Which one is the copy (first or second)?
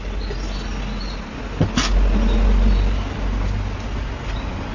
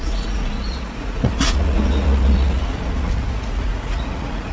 second